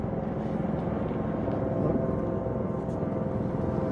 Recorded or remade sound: recorded